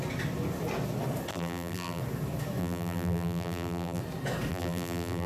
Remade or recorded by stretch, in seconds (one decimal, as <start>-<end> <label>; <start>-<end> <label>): 0.0-1.3 recorded; 1.3-2.0 remade; 2.0-2.6 recorded; 2.6-4.0 remade; 4.0-4.5 recorded; 4.5-5.3 remade